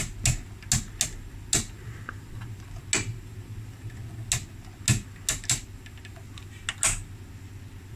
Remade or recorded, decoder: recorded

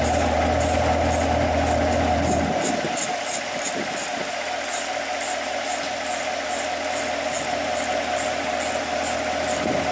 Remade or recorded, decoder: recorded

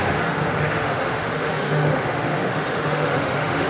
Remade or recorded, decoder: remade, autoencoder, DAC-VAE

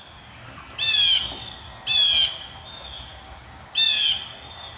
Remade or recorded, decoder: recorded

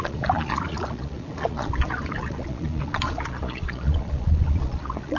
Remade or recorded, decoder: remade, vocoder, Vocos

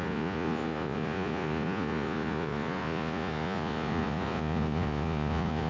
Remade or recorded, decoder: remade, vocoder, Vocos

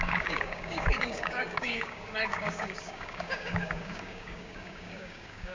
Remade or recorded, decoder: remade, codec, DAC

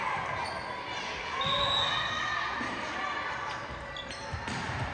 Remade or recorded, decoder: recorded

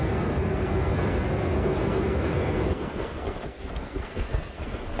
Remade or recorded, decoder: remade, codec, SNAC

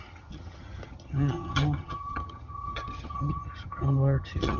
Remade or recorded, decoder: remade, vocoder, HiFi-GAN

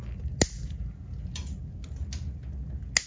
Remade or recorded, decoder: recorded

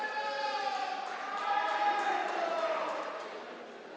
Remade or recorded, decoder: recorded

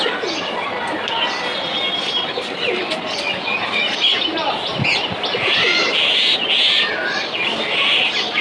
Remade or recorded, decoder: recorded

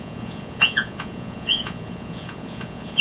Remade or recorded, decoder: remade, vocoder, Vocos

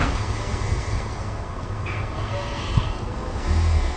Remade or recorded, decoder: remade, codec, SNAC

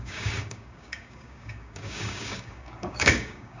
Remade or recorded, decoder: remade, codec, DAC